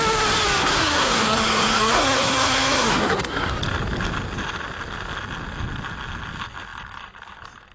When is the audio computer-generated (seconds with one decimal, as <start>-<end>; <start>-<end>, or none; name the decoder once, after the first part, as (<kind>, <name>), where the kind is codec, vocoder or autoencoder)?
0.6-3.6 (codec, SNAC)